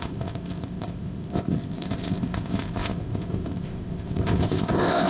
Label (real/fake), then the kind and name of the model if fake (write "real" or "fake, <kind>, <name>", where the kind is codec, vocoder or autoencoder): fake, codec, ZipCodec